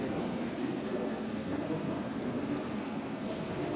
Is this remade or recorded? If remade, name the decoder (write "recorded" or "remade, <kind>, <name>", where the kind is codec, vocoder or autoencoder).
remade, codec, SNAC